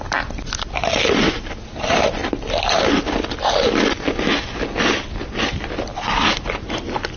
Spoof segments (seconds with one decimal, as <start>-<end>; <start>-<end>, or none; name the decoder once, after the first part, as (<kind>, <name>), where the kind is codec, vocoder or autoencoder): none